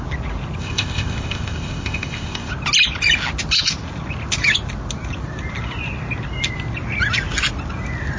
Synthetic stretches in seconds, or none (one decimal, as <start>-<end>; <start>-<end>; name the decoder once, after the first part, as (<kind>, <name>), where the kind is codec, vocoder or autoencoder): 0.6-2.5 (codec, ZipCodec)